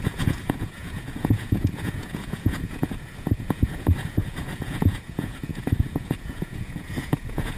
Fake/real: fake